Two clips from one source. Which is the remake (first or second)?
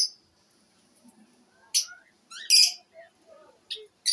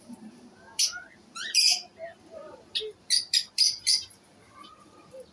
second